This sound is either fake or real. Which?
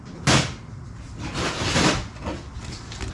real